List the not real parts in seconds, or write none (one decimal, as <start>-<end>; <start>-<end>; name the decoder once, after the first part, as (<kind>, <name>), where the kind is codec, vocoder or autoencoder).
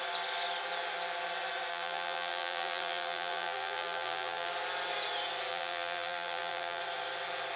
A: 1.7-4.5 (vocoder, BigVGAN v2); 5.5-6.8